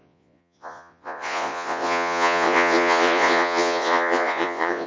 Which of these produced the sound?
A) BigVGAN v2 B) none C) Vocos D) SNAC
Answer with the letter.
C